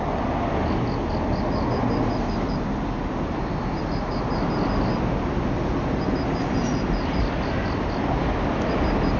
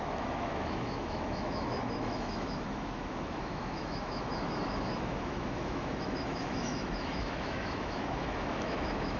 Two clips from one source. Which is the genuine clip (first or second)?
first